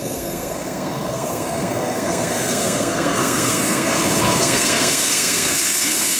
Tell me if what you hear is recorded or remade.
remade